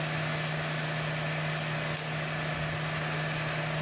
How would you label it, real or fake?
real